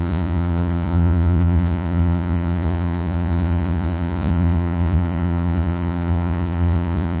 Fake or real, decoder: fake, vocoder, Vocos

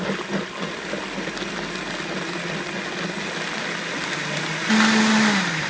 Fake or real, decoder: real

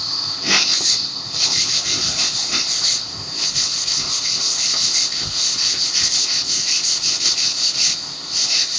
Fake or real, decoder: fake, codec, ZipCodec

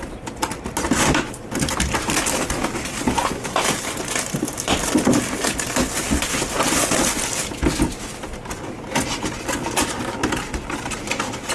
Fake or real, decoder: real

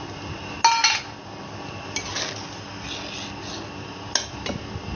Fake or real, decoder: real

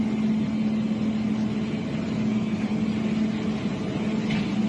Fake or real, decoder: real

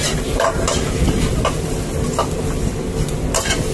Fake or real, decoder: real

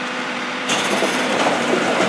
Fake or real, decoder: fake, vocoder, BigVGAN v2